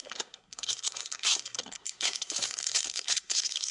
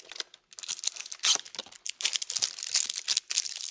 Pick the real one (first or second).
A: second